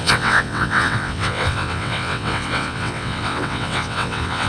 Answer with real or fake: fake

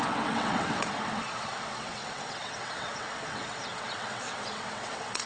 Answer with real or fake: fake